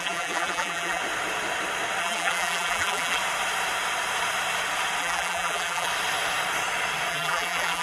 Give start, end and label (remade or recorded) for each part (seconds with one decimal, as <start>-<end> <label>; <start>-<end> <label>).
0.0-1.0 remade; 1.0-2.0 recorded; 2.0-3.2 remade; 3.2-5.0 recorded; 5.0-5.9 remade; 5.9-7.1 recorded; 7.1-7.8 remade